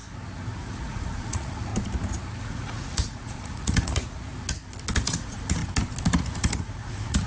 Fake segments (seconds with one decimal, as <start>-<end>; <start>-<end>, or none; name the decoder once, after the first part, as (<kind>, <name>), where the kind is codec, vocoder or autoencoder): 0.6-1.7 (vocoder, Vocos); 2.4-4.3; 5.0-5.6; 6.1-7.3

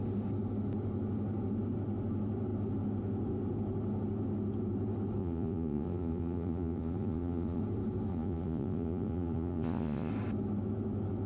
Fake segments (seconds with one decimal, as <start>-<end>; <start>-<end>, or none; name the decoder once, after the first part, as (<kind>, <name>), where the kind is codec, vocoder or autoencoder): 5.2-7.6 (vocoder, Vocos); 8.1-10.1

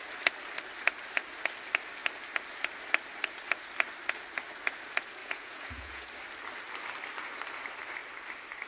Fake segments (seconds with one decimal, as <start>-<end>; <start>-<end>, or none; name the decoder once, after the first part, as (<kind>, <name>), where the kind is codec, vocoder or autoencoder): 5.2-6.1 (vocoder, Vocos)

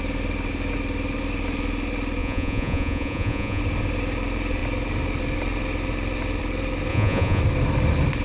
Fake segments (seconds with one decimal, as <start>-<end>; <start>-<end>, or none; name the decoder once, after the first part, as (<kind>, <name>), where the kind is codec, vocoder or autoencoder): 2.2-3.6 (vocoder, Vocos); 6.9-7.4

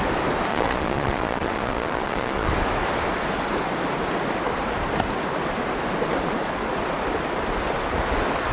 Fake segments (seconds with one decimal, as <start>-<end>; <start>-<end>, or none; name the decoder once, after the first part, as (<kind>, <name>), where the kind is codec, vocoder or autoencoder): 0.5-2.5 (vocoder, Vocos)

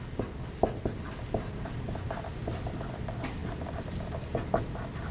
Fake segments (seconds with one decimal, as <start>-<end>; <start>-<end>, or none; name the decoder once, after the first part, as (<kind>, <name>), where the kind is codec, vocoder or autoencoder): none